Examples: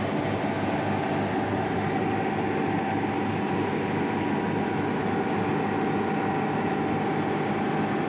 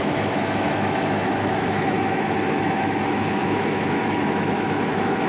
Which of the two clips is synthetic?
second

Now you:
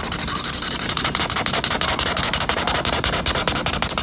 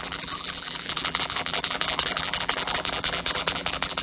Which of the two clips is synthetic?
second